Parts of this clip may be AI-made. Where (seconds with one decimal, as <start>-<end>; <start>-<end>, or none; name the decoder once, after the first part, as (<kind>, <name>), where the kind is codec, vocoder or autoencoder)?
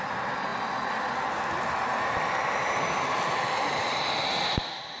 none